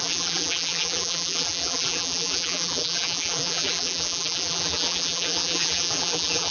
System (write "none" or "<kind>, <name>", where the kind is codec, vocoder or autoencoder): vocoder, BigVGAN v2